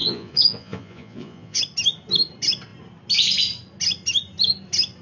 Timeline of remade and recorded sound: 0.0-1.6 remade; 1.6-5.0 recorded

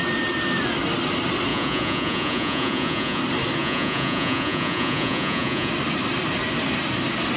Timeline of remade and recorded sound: 0.0-1.5 recorded; 1.5-3.2 remade; 3.2-3.6 recorded; 3.6-5.7 remade; 5.7-7.4 recorded

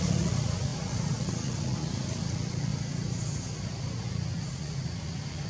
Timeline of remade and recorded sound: 0.0-2.7 remade; 2.7-4.1 recorded; 4.1-5.5 remade

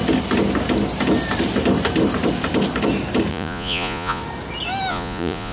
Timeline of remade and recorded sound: 0.0-3.3 recorded; 3.3-4.2 remade; 4.2-4.9 recorded; 4.9-5.5 remade

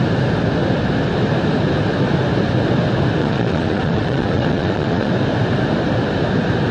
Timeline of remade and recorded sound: 0.0-3.2 recorded; 3.2-5.1 remade; 5.1-6.7 recorded